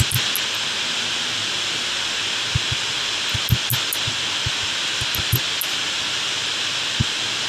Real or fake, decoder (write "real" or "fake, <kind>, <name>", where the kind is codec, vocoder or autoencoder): real